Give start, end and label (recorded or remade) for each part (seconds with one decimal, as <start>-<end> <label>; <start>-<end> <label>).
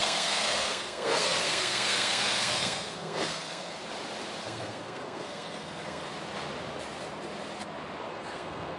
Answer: 0.0-3.8 remade; 3.8-4.4 recorded; 4.4-6.1 remade; 6.1-8.1 recorded; 8.1-8.8 remade